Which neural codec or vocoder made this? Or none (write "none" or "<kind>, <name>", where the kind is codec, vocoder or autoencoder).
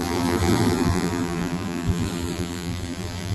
vocoder, BigVGAN v2